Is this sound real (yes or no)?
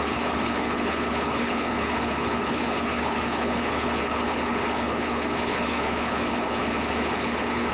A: no